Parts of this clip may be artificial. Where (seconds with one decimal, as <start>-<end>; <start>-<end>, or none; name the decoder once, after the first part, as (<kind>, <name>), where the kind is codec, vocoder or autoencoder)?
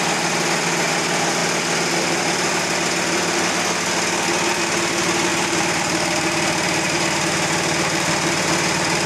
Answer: 5.3-9.1 (vocoder, BigVGAN v2)